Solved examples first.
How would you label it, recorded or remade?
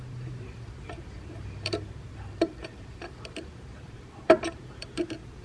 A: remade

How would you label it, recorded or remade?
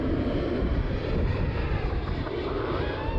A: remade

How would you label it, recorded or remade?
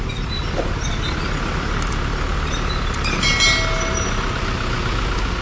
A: recorded